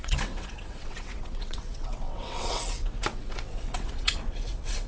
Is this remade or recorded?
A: remade